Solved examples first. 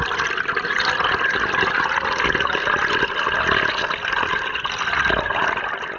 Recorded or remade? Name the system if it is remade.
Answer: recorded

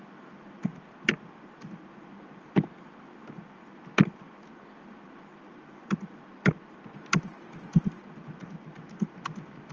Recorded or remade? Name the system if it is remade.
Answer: recorded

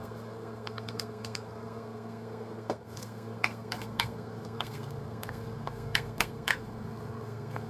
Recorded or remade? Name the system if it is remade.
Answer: remade, codec, SNAC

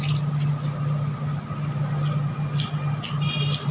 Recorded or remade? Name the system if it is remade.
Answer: recorded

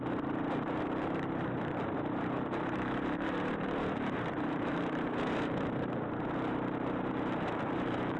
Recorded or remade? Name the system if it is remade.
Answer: remade, vocoder, BigVGAN v2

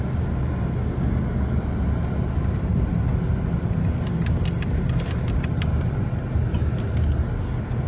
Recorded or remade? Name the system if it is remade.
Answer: recorded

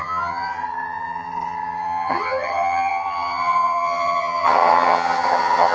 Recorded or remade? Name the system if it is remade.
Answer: remade, vocoder, HiFi-GAN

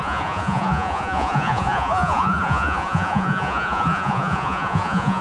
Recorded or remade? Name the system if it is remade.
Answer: remade, vocoder, Vocos